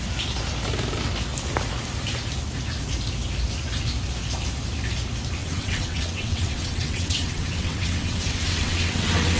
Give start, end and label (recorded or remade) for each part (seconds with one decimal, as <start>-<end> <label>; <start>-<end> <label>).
0.0-5.4 recorded; 5.4-9.4 remade